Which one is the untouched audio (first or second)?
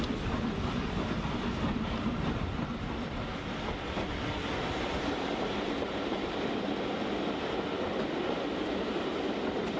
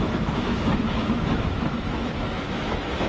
first